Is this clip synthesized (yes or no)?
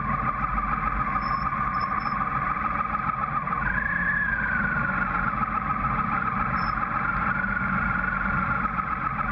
no